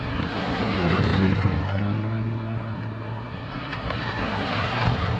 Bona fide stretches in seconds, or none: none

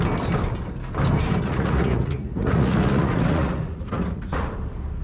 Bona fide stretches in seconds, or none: 0.0-1.5; 4.5-5.0

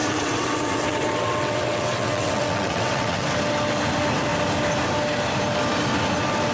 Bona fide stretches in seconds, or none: 3.3-6.5

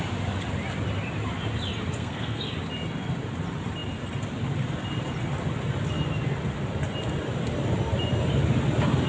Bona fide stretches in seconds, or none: 0.0-2.0; 2.5-9.1

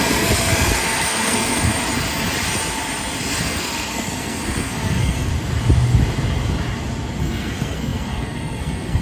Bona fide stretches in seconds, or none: 1.7-3.4; 5.3-7.2

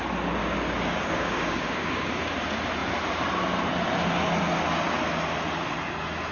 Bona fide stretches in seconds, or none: 0.0-0.4; 2.3-6.3

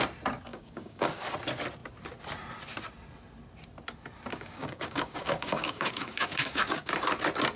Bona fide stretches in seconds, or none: 0.0-0.5; 1.2-4.3; 6.9-7.6